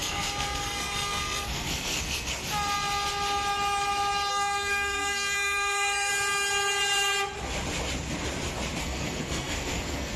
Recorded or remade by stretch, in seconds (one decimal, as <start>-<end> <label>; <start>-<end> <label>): 0.0-2.4 remade; 2.4-4.3 recorded; 4.3-6.1 remade; 6.1-8.8 recorded; 8.8-10.2 remade